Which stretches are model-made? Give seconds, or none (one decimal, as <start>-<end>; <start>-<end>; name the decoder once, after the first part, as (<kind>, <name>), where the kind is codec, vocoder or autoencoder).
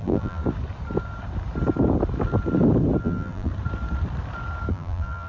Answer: 0.0-0.4 (vocoder, BigVGAN v2); 3.0-3.5; 4.7-5.3